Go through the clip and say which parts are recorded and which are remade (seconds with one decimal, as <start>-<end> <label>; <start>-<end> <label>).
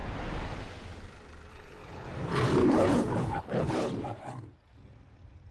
0.0-1.5 recorded; 1.5-2.1 remade; 2.1-2.6 recorded; 2.6-3.9 remade; 3.9-5.5 recorded